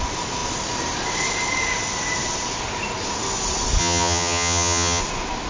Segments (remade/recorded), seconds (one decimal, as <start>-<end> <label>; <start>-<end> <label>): 0.0-3.8 recorded; 3.8-5.0 remade; 5.0-5.5 recorded